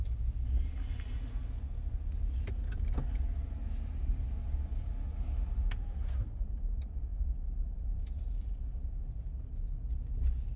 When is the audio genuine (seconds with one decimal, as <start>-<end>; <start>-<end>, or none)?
0.0-7.1; 8.9-10.6